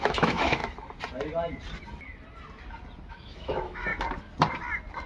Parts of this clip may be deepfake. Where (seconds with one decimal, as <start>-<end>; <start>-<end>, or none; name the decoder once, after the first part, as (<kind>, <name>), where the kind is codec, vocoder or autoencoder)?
0.0-0.6 (autoencoder, DAC-VAE); 3.1-3.9